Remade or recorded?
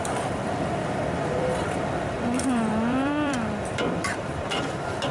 remade